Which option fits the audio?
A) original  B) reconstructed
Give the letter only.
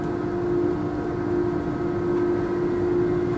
A